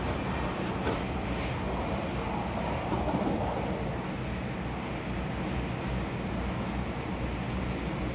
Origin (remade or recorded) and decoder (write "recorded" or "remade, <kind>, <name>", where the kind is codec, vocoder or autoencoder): recorded